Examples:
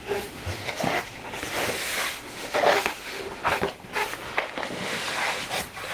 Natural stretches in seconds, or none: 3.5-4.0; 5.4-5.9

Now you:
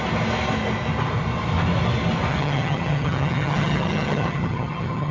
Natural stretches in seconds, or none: 0.0-2.3

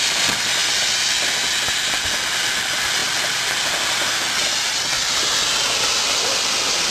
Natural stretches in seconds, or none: 0.0-6.9

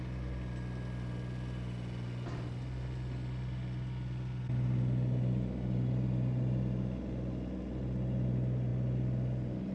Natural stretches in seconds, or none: 0.0-9.7

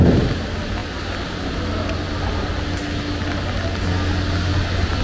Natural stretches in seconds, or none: 0.0-5.0

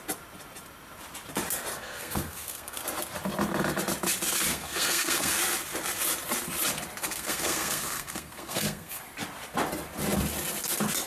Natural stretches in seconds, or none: 0.0-1.7; 2.8-4.5; 5.4-7.0; 9.0-11.1

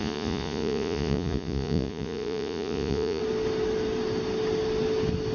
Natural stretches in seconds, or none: 3.2-5.3